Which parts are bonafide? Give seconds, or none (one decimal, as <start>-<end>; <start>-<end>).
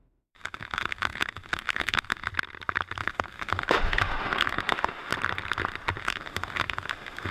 2.3-3.0; 5.1-6.0